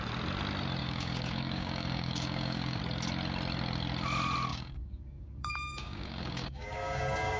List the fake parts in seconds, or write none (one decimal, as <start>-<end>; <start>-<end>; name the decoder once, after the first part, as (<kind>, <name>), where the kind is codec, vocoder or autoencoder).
0.8-2.8 (codec, DAC); 4.5-7.4